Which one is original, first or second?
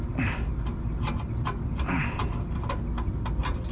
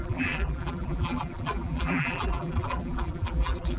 first